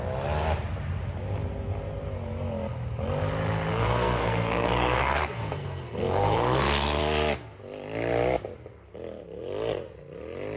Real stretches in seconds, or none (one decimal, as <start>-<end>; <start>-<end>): 0.0-3.7; 7.0-10.6